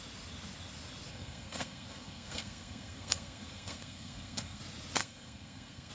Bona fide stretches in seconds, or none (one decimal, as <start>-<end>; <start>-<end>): 0.0-1.1; 4.6-5.0